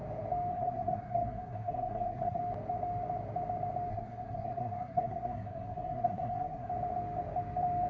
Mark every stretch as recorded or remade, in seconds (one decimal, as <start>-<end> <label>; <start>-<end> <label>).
0.0-0.5 recorded; 0.5-2.4 remade; 2.4-3.9 recorded; 3.9-6.7 remade; 6.7-7.9 recorded